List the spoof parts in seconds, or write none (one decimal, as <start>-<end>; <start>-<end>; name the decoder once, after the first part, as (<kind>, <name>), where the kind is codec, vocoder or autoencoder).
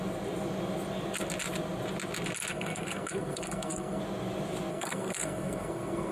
2.5-4.0 (codec, SNAC); 4.7-6.1